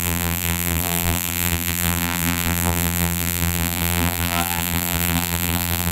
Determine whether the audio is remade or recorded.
remade